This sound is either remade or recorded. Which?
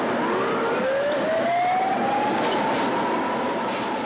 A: recorded